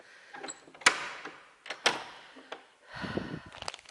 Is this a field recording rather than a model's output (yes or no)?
yes